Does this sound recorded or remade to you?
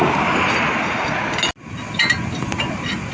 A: recorded